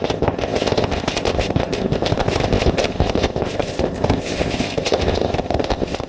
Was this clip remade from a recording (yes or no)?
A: yes